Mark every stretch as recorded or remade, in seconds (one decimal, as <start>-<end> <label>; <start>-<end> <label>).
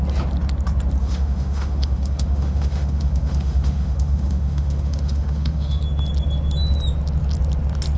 0.0-1.0 recorded; 1.0-5.8 remade; 5.8-8.0 recorded